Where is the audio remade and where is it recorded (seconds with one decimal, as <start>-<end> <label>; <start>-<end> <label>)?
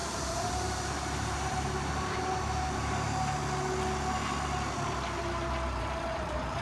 0.0-3.4 remade; 3.4-5.8 recorded; 5.8-6.6 remade